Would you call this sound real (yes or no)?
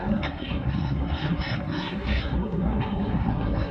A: no